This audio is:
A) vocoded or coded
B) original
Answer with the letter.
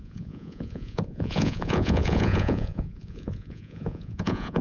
A